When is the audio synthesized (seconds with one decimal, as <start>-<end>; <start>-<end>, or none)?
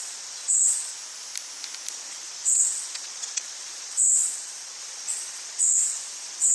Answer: 0.0-0.9; 1.9-6.5